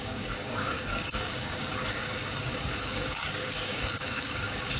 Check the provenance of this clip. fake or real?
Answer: fake